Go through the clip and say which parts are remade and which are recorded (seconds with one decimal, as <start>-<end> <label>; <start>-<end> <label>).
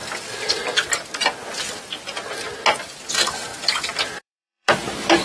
0.0-3.1 recorded; 3.1-3.5 remade; 3.5-4.1 recorded; 4.1-5.2 remade